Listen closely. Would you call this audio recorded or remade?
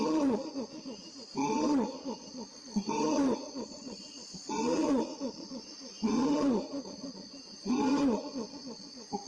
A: remade